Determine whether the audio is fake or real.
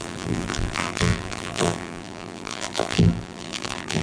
fake